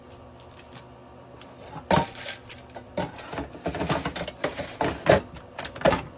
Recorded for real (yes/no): yes